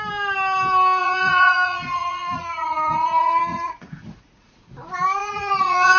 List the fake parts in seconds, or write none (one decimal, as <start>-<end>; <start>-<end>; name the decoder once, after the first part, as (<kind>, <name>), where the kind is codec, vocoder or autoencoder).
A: 1.0-4.6 (vocoder, Vocos); 5.2-6.0